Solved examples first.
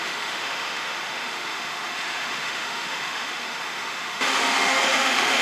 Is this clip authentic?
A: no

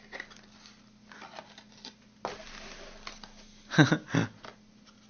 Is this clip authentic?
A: yes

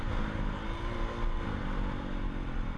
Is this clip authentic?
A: yes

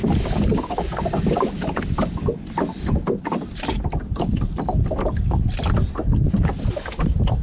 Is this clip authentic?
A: yes